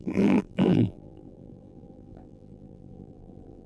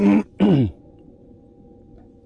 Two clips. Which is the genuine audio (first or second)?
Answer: second